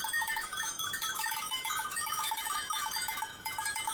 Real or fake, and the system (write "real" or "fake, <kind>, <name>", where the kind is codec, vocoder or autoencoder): fake, autoencoder, DAC-VAE